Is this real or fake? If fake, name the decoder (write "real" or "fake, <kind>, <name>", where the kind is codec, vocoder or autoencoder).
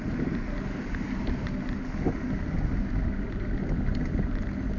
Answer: real